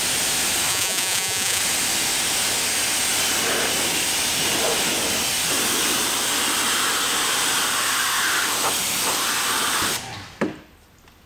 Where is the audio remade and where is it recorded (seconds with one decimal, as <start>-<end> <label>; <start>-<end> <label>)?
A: 0.0-0.7 recorded; 0.7-1.6 remade; 1.6-11.3 recorded